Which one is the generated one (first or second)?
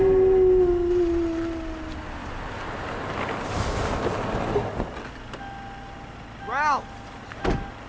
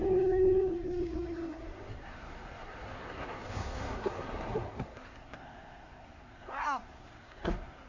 second